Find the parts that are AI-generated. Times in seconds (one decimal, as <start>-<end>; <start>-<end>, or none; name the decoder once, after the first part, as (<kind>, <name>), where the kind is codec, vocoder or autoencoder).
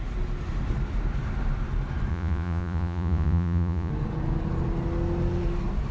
2.1-3.9 (vocoder, Vocos)